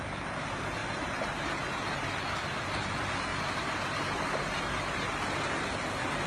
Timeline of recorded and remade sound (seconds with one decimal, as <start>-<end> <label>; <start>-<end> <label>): 0.0-0.8 recorded; 0.8-2.1 remade; 2.1-3.3 recorded; 3.3-5.1 remade; 5.1-6.3 recorded